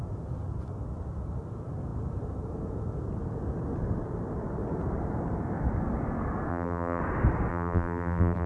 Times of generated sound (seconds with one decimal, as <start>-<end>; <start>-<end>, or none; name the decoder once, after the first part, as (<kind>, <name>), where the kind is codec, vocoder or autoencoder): 6.5-7.0 (vocoder, BigVGAN v2); 7.5-8.5